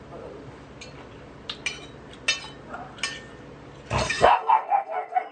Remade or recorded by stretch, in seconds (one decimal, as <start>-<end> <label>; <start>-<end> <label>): 0.0-4.0 recorded; 4.0-5.3 remade